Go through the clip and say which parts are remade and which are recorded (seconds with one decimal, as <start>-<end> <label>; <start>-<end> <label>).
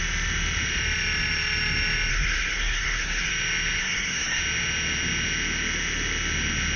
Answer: 0.0-2.1 recorded; 2.1-3.3 remade; 3.3-3.8 recorded; 3.8-4.4 remade; 4.4-6.8 recorded